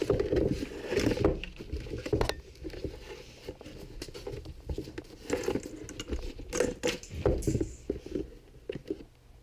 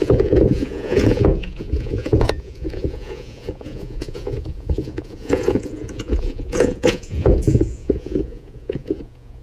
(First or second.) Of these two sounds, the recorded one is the first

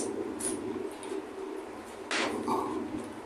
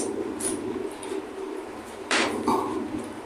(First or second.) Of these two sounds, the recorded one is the first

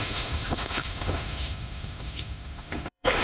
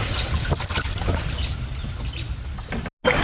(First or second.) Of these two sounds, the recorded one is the second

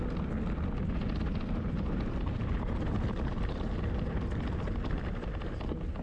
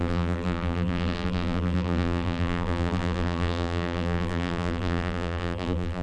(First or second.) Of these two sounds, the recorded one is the first